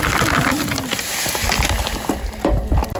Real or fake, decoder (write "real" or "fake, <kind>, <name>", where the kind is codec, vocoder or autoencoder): real